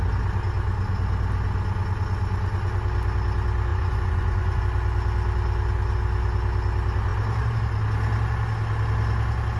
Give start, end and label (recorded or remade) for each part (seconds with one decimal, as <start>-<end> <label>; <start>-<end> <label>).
0.0-3.7 recorded; 3.7-4.6 remade; 4.6-9.6 recorded